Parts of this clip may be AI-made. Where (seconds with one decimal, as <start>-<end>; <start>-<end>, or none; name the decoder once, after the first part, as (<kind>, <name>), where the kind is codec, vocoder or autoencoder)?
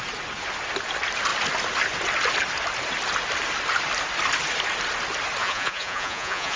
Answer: 5.4-6.6 (vocoder, Vocos)